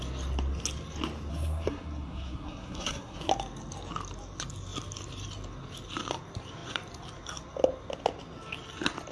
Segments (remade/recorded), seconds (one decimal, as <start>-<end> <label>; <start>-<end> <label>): 0.0-1.3 recorded; 1.3-3.3 remade; 3.3-9.1 recorded